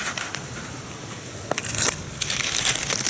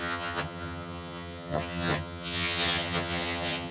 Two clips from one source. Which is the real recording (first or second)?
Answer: first